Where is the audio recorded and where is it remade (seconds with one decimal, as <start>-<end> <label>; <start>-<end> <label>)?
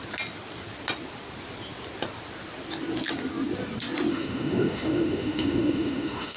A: 0.0-4.1 recorded; 4.1-6.4 remade